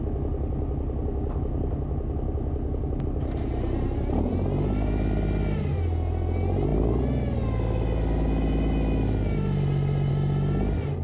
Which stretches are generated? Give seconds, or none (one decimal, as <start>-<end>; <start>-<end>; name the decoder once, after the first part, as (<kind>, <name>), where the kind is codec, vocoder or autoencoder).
none